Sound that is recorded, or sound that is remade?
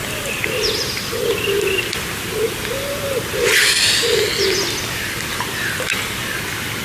recorded